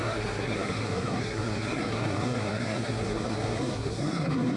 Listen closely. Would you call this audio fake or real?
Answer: fake